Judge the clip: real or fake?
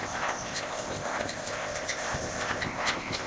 fake